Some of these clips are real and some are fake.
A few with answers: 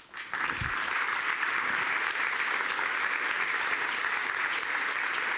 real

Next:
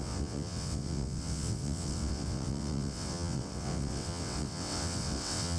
fake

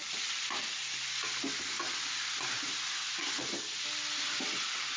real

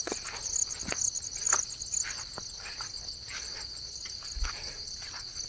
real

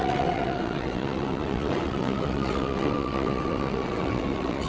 fake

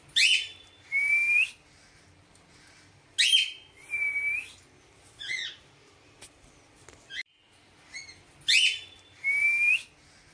real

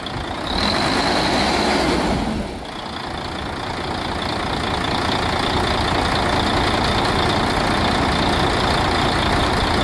real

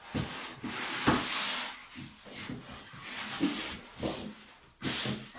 real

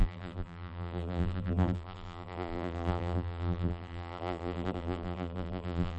fake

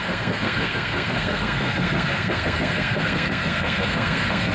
fake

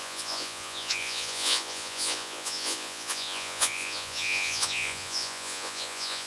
fake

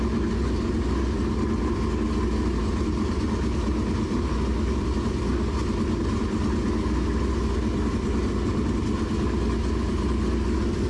real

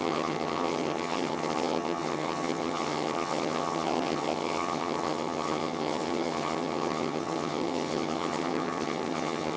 fake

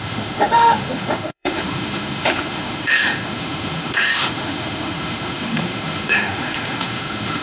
fake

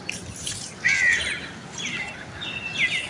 real